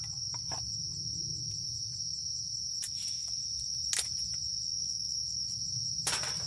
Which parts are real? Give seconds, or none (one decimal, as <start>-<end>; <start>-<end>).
0.0-4.7; 5.6-6.5